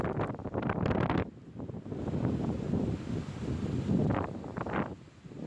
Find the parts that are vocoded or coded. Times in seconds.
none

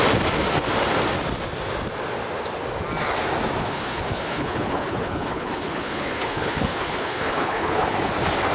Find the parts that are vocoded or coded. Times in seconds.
3.6-8.1 (codec, HILCodec)

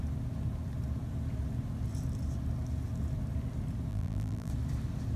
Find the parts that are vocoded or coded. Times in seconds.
3.9-4.5 (vocoder, BigVGAN v2)

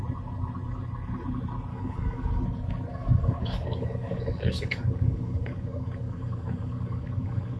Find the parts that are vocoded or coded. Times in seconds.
1.7-2.3 (codec, DAC); 2.9-7.6

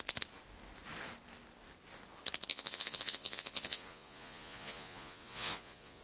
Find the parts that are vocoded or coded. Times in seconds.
2.5-6.0 (vocoder, Vocos)

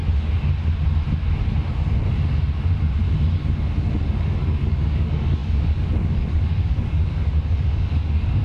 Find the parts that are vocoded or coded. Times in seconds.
4.1-8.4 (codec, DAC)